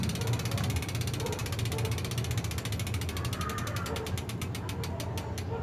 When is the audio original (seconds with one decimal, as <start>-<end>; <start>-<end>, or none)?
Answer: 0.0-5.6